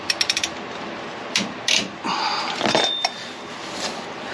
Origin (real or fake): real